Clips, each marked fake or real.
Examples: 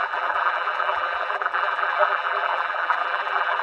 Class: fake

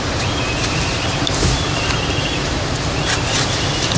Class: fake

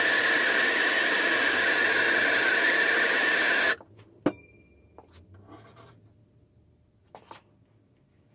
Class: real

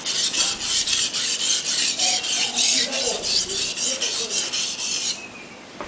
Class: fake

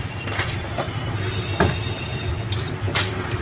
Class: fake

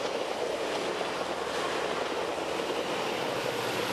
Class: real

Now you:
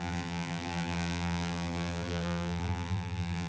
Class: fake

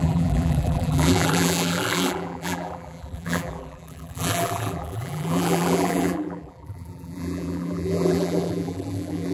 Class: fake